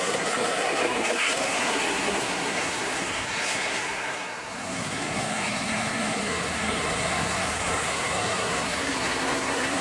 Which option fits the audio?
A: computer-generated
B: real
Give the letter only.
A